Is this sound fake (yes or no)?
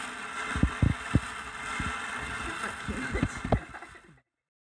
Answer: no